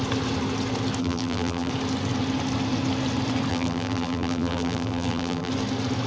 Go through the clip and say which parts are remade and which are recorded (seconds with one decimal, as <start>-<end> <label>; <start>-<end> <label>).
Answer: 0.0-1.0 recorded; 1.0-1.7 remade; 1.7-3.5 recorded; 3.5-5.5 remade; 5.5-6.1 recorded